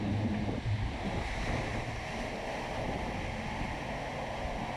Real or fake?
real